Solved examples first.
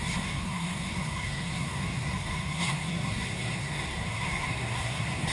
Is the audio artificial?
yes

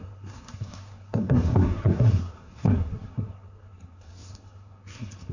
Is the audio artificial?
yes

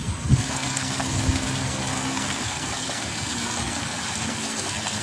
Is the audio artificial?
yes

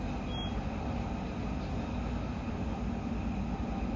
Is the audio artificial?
no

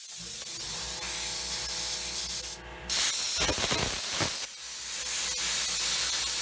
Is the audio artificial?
no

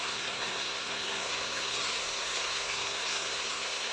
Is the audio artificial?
yes